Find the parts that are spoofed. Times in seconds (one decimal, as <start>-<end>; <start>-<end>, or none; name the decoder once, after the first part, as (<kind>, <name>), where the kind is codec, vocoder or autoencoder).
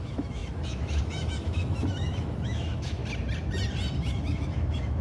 0.0-3.0 (autoencoder, DAC-VAE); 4.0-5.0